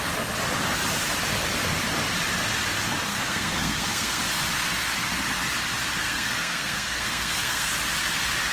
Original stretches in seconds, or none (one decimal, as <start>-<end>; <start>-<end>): 0.0-3.1; 4.2-6.0; 7.7-8.5